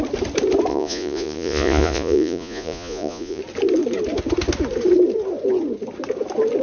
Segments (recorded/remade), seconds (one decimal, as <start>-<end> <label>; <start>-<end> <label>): 0.0-0.7 recorded; 0.7-3.4 remade; 3.4-6.6 recorded